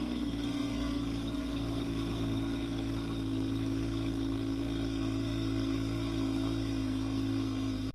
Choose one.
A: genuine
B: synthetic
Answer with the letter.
B